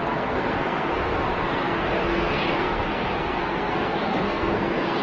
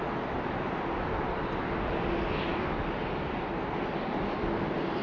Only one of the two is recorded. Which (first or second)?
second